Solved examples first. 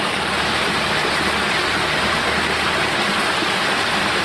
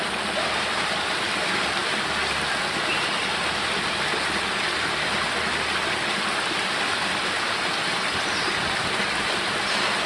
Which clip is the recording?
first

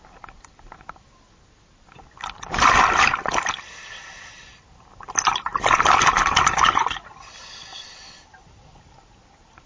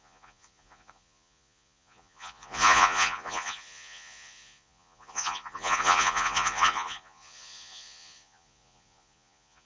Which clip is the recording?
first